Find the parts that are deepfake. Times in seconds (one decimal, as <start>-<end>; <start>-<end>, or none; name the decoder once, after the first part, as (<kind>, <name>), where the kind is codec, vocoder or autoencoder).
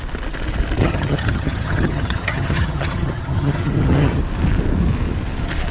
0.8-4.2 (vocoder, HiFi-GAN)